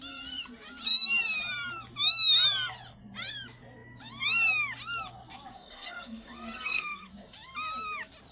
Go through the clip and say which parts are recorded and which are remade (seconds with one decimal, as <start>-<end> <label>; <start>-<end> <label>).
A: 0.0-5.5 recorded; 5.5-7.1 remade; 7.1-8.3 recorded